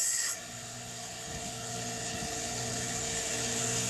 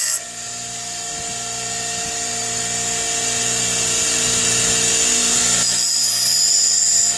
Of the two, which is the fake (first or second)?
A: first